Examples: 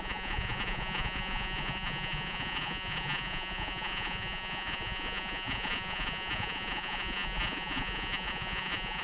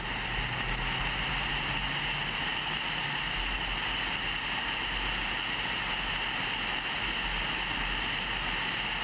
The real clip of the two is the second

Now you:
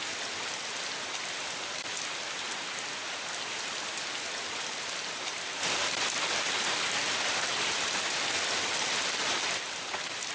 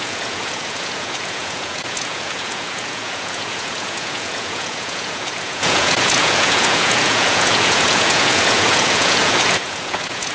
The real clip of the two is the first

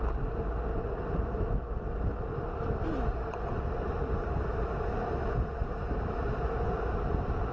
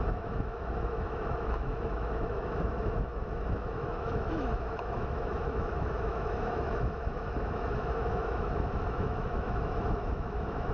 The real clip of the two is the first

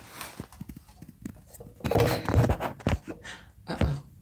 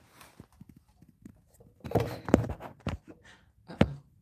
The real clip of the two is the first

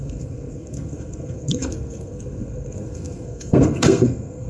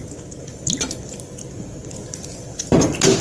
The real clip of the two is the second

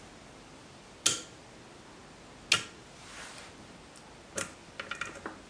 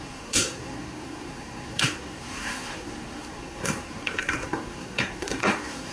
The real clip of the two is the first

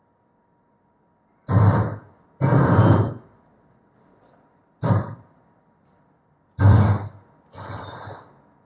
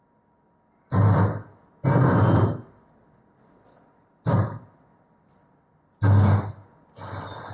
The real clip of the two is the second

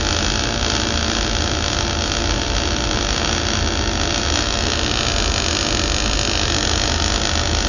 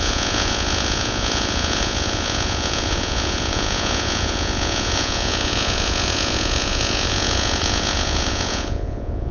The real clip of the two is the first